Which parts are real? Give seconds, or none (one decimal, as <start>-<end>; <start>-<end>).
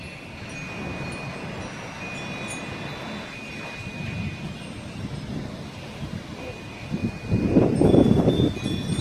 0.0-9.0